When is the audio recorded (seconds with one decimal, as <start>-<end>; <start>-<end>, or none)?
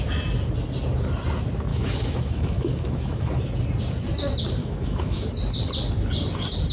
0.0-1.7; 3.4-4.6; 5.2-6.7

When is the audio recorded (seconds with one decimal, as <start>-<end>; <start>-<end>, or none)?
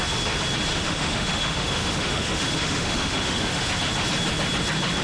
0.0-0.7; 3.7-5.0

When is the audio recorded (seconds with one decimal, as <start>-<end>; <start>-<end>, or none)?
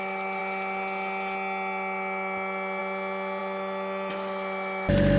0.0-5.2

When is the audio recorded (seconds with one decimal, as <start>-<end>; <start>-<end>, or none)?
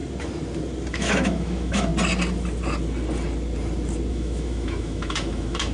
0.0-0.9; 1.9-4.1